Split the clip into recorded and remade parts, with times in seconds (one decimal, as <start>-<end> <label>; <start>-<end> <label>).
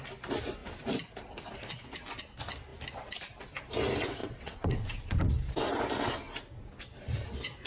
0.0-4.2 recorded; 4.2-5.3 remade; 5.3-7.7 recorded